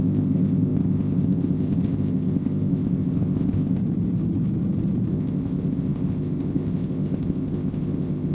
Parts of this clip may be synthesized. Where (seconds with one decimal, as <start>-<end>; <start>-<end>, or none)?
0.0-3.8; 5.1-8.3